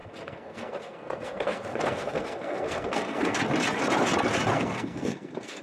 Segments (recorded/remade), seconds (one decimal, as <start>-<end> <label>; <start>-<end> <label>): 0.0-3.4 remade; 3.4-4.5 recorded; 4.5-5.6 remade